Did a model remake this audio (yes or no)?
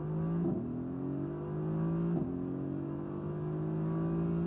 no